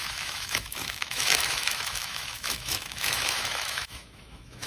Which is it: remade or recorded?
remade